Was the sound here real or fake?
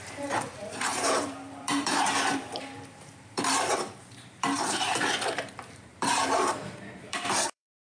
fake